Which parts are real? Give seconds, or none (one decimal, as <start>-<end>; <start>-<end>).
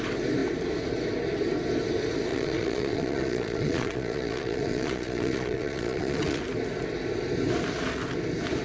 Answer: 0.0-2.3; 6.4-8.6